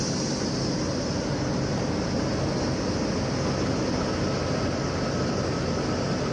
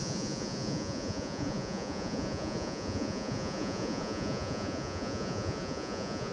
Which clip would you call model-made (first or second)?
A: second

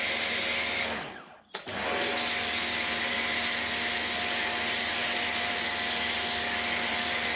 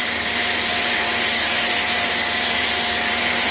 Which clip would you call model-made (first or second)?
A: second